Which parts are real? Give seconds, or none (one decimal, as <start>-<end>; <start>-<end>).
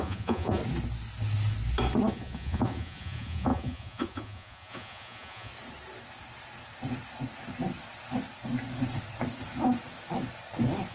0.6-2.1; 5.5-10.9